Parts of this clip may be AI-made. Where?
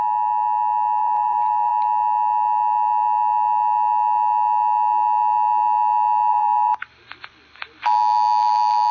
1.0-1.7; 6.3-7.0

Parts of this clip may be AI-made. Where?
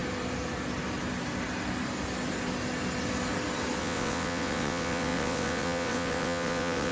3.8-6.9